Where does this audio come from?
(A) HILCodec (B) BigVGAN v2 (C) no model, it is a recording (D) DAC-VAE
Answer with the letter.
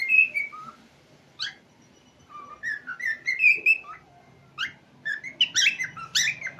C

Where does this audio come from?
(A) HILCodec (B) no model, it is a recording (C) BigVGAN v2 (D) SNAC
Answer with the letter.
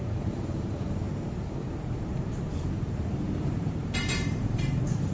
C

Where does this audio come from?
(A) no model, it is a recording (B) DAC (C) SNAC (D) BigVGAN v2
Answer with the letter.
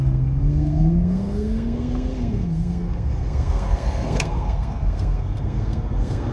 C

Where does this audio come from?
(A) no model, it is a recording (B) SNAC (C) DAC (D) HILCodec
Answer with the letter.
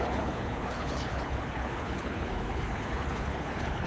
D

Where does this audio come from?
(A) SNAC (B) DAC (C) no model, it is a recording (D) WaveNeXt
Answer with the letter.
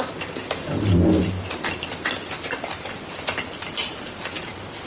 C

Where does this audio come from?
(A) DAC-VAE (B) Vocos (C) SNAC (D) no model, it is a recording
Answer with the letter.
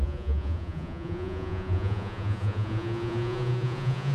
B